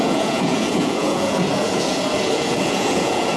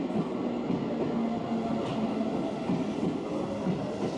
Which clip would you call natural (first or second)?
second